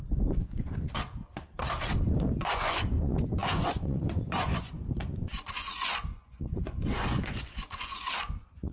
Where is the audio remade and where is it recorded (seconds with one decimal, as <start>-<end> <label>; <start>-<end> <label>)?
0.0-1.2 remade; 1.2-2.1 recorded; 2.1-8.7 remade